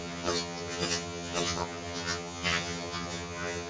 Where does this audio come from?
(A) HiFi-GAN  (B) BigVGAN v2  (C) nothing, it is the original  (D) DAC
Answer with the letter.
A